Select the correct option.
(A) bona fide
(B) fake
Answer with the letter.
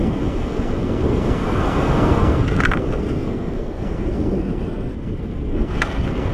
B